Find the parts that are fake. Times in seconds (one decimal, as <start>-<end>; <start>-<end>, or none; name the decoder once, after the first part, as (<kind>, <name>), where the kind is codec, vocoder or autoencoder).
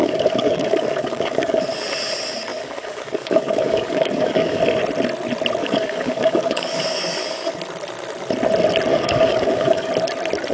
0.0-1.6 (codec, DAC); 2.5-4.6; 5.6-7.5; 8.9-9.9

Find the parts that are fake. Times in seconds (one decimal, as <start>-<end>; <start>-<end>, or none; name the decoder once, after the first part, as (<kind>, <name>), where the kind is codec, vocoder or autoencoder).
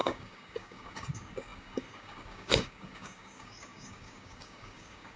0.0-5.2 (codec, DAC)